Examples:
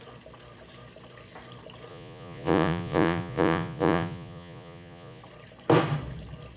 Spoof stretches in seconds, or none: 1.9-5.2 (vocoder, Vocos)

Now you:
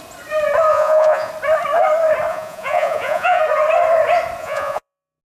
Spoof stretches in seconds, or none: 0.7-1.3 (vocoder, Vocos); 2.3-3.4; 4.4-5.2

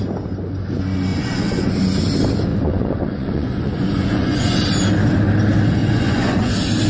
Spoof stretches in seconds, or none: 1.1-1.7 (vocoder, Vocos); 2.5-4.6; 5.8-6.5

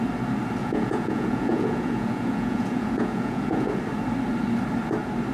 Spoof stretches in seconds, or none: 0.6-3.8 (vocoder, Vocos)

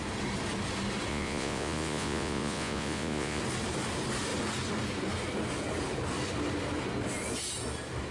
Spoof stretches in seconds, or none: 1.1-3.4 (vocoder, Vocos)

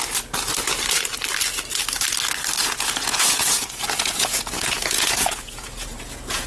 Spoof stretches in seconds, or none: 2.6-6.5 (vocoder, Vocos)

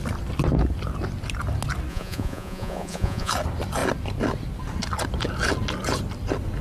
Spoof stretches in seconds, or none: 1.9-3.3 (vocoder, Vocos)